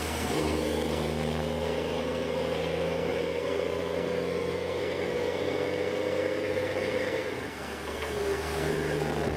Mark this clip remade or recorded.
remade